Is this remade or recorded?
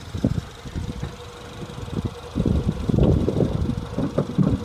recorded